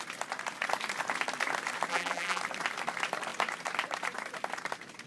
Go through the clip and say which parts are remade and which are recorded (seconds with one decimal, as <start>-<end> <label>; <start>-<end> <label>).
0.0-1.9 recorded; 1.9-2.4 remade; 2.4-5.1 recorded

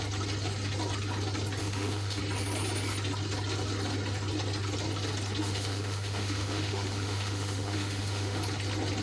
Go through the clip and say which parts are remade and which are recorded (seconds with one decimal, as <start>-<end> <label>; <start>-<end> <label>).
0.0-1.6 recorded; 1.6-2.2 remade; 2.2-5.4 recorded; 5.4-8.4 remade; 8.4-9.0 recorded

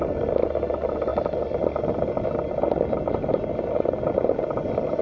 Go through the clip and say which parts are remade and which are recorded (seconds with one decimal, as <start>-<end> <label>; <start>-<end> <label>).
0.0-5.0 recorded

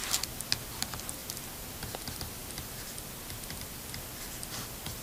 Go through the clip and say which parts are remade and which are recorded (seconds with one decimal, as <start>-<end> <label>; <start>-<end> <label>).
0.0-5.0 recorded

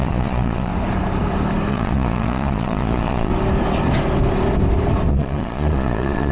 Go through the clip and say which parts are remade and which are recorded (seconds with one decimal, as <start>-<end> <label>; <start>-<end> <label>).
0.0-0.7 remade; 0.7-1.7 recorded; 1.7-3.3 remade; 3.3-5.1 recorded; 5.1-6.3 remade

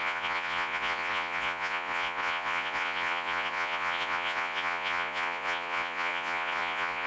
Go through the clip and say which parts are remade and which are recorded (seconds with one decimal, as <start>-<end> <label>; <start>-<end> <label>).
0.0-7.1 remade